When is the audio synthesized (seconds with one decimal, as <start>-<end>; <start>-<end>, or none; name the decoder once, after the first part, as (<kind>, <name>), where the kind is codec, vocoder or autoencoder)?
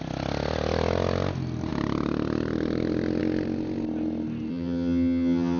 4.5-5.6 (vocoder, HiFi-GAN)